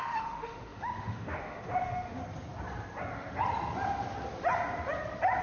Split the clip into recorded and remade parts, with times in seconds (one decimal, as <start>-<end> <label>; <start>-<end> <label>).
0.0-2.2 remade; 2.2-5.4 recorded